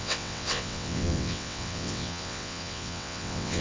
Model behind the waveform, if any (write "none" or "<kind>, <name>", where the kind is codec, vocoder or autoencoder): vocoder, WaveNeXt